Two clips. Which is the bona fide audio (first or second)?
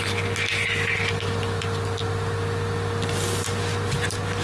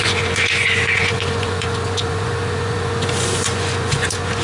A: first